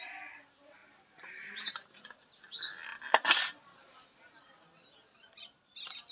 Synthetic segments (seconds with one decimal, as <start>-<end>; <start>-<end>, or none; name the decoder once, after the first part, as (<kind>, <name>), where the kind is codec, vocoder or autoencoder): none